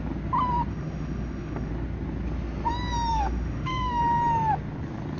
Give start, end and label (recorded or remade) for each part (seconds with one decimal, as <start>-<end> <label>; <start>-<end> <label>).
0.0-0.7 recorded; 0.7-1.7 remade; 1.7-3.1 recorded; 3.1-4.0 remade; 4.0-5.2 recorded